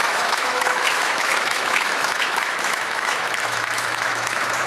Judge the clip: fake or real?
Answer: fake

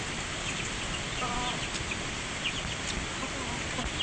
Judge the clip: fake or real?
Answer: real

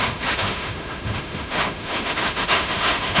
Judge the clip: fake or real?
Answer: fake